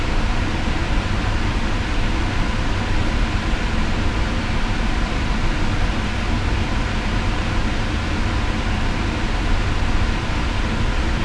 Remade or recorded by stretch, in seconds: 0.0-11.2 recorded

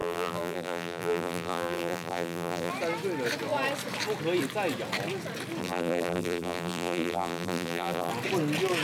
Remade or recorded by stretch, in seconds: 0.0-2.7 remade; 2.7-5.6 recorded; 5.6-8.1 remade; 8.1-8.8 recorded

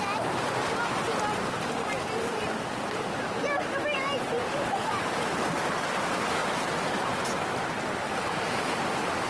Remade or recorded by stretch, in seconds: 0.0-6.4 recorded; 6.4-6.9 remade; 6.9-9.3 recorded

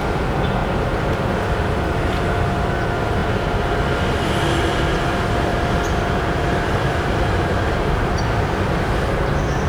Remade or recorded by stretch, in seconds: 0.0-0.6 recorded; 0.6-1.5 remade; 1.5-5.5 recorded; 5.5-8.1 remade; 8.1-9.7 recorded

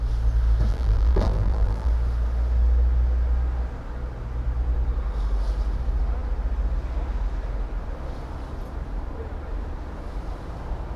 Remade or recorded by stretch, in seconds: 0.0-0.7 recorded; 0.7-1.9 remade; 1.9-11.0 recorded

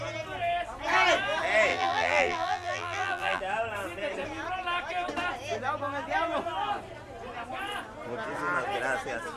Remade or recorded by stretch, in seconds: 0.0-1.7 recorded; 1.7-3.4 remade; 3.4-9.4 recorded